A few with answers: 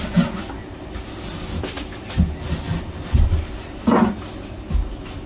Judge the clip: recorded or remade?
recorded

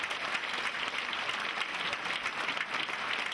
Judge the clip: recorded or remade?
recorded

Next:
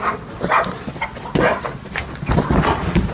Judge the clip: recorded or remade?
recorded